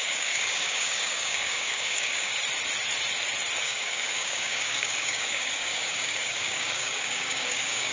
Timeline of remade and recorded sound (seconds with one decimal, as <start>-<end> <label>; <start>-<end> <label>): 0.0-2.3 remade; 2.3-3.6 recorded; 3.6-7.9 remade

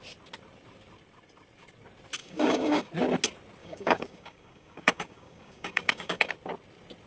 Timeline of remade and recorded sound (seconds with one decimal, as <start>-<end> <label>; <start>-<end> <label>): 0.0-2.2 recorded; 2.2-2.9 remade; 2.9-3.6 recorded; 3.6-6.3 remade; 6.3-7.1 recorded